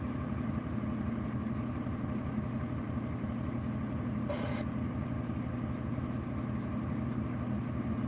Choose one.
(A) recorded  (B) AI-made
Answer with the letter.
A